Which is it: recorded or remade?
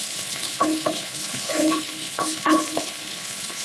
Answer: remade